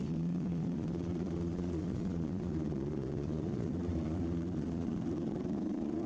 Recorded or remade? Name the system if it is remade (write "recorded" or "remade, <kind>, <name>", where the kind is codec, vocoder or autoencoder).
remade, vocoder, Vocos